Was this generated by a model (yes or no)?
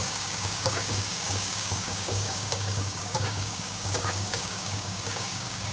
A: yes